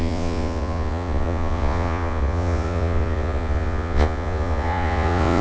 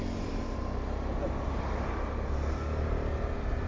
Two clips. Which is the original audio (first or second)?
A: second